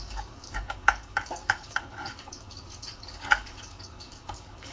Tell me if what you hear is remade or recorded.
remade